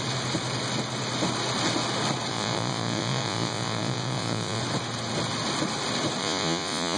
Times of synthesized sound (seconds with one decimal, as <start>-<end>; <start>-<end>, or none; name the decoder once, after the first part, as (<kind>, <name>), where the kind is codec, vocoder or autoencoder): 2.3-4.6 (vocoder, Vocos); 6.2-7.0